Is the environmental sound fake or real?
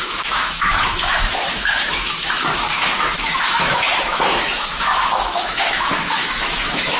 fake